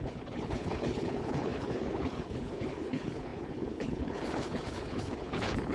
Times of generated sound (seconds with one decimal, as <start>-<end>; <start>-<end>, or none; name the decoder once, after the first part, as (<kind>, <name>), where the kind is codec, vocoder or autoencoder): 0.0-5.7 (codec, HILCodec)